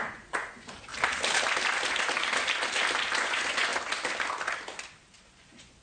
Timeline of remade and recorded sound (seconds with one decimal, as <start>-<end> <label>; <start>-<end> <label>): 0.0-0.9 remade; 0.9-3.2 recorded; 3.2-3.7 remade; 3.7-5.2 recorded; 5.2-5.8 remade